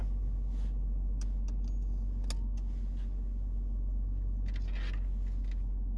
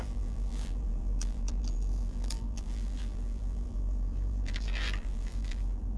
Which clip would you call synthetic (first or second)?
second